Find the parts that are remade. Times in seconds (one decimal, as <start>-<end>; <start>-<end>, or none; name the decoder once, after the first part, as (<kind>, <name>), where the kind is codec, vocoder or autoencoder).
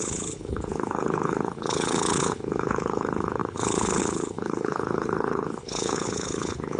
0.0-6.8 (codec, HILCodec)